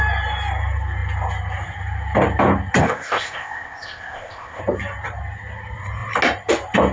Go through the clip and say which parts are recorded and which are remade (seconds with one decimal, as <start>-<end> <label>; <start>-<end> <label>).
0.0-2.8 recorded; 2.8-4.6 remade; 4.6-6.9 recorded